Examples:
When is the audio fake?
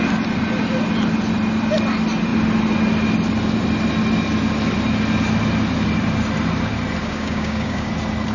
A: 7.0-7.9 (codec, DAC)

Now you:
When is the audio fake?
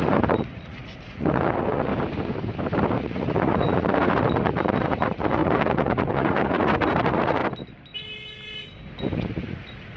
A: 0.0-1.9 (vocoder, Vocos); 2.9-7.4; 9.0-10.0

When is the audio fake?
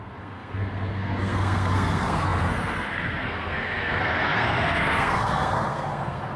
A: 0.0-6.4 (codec, SNAC)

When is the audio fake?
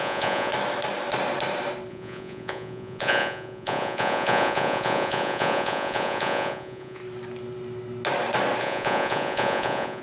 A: 0.0-0.5 (vocoder, Vocos); 1.9-7.0; 8.6-10.0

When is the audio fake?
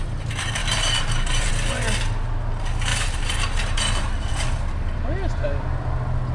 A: 0.6-1.5 (vocoder, BigVGAN v2); 2.9-4.3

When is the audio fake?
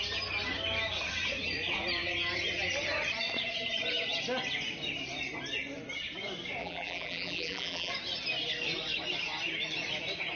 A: 6.6-7.9 (vocoder, BigVGAN v2)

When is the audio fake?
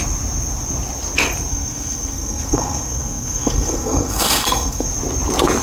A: 1.5-4.9 (codec, SNAC)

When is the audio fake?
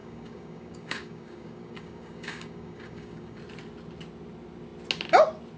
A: 0.0-3.4 (codec, DAC)